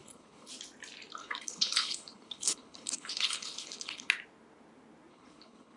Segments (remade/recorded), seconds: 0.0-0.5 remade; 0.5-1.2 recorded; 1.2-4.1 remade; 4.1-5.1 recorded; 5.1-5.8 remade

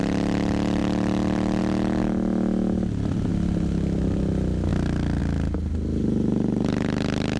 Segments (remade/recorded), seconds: 0.0-7.4 recorded

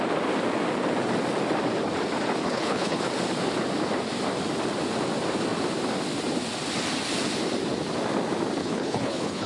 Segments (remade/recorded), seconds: 0.0-2.4 recorded; 2.4-3.0 remade; 3.0-8.6 recorded; 8.6-9.5 remade